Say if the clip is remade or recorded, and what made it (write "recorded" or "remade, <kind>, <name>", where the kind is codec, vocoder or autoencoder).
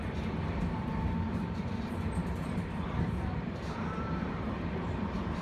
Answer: remade, vocoder, BigVGAN v2